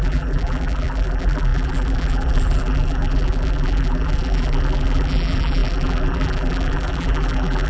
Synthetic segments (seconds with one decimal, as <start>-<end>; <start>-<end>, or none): 0.0-7.7